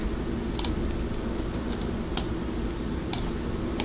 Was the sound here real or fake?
real